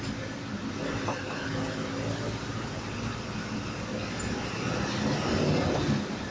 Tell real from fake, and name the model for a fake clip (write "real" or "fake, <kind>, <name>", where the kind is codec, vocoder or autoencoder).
real